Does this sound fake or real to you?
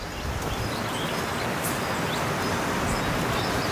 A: real